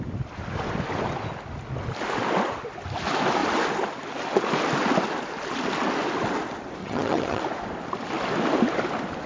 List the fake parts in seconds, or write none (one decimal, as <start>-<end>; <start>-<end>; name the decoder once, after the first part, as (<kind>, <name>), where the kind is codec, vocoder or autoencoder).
6.8-7.4 (vocoder, HiFi-GAN)